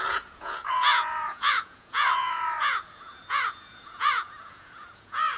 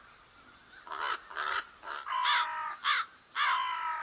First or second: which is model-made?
first